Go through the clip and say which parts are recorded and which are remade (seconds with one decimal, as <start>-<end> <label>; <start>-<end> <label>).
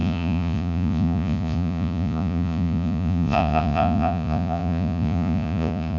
0.0-6.0 remade